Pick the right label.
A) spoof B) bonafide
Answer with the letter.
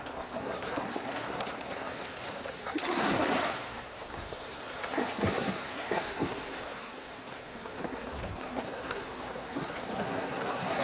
A